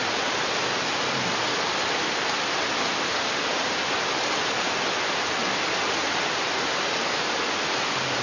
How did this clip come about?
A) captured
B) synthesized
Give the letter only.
A